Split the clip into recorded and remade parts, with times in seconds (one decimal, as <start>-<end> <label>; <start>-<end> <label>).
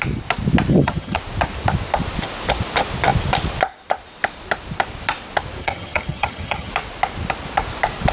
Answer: 0.0-0.7 recorded; 0.7-1.2 remade; 1.2-5.6 recorded; 5.6-6.7 remade; 6.7-8.1 recorded